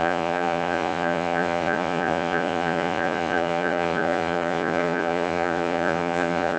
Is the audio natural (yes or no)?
no